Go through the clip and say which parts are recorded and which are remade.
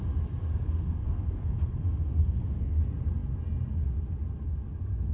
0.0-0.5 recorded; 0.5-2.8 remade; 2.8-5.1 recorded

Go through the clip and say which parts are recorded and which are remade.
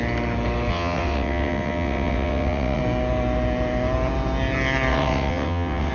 0.0-0.7 recorded; 0.7-2.8 remade; 2.8-4.9 recorded; 4.9-5.9 remade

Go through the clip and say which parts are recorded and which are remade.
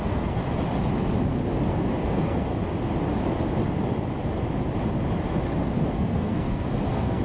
0.0-0.4 remade; 0.4-1.7 recorded; 1.7-2.5 remade; 2.5-5.9 recorded; 5.9-7.2 remade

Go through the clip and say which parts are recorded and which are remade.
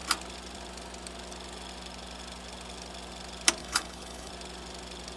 0.0-3.6 recorded; 3.6-4.3 remade; 4.3-5.2 recorded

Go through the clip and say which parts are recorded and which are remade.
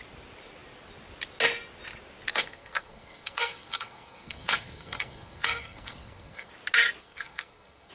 0.0-2.3 recorded; 2.3-6.5 remade; 6.5-7.0 recorded; 7.0-7.9 remade